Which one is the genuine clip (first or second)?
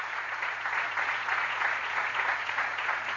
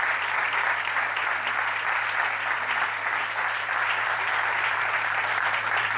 second